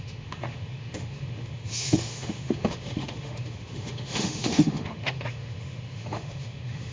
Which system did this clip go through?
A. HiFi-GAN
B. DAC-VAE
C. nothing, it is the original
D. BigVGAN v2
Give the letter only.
B